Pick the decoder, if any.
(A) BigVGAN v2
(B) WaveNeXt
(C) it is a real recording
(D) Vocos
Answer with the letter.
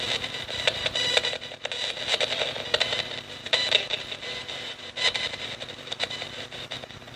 A